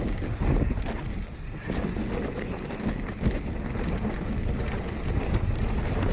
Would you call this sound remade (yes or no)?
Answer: no